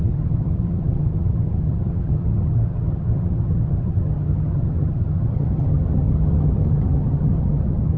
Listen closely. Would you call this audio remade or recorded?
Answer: remade